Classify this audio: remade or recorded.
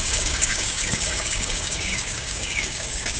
remade